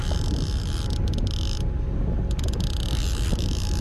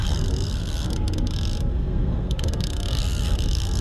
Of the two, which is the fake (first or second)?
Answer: second